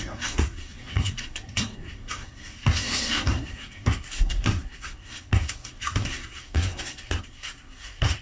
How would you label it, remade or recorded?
remade